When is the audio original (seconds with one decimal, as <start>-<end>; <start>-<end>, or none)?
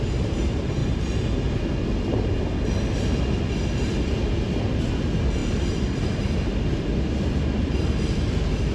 0.0-8.7